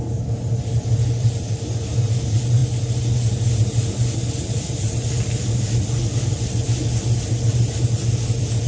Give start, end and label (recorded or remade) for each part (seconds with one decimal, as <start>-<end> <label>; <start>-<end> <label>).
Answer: 0.0-8.7 recorded